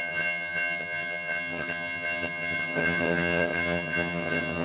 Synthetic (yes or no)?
yes